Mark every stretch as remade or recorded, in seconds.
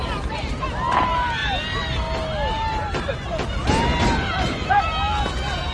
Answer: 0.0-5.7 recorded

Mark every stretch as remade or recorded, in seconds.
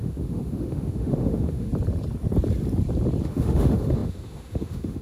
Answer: 0.0-1.7 remade; 1.7-3.2 recorded; 3.2-5.0 remade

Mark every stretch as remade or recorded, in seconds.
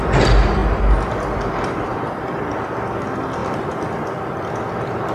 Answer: 0.0-1.9 recorded; 1.9-2.5 remade; 2.5-3.4 recorded; 3.4-4.4 remade; 4.4-5.1 recorded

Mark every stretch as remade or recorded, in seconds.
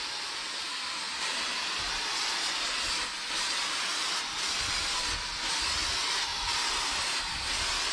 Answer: 0.0-7.9 recorded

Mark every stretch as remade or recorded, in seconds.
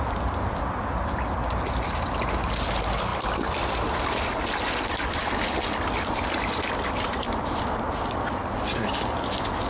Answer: 0.0-9.7 recorded